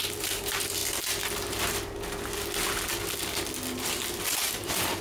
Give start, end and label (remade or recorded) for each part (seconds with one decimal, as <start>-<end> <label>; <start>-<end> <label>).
0.0-0.8 remade; 0.8-3.8 recorded; 3.8-5.0 remade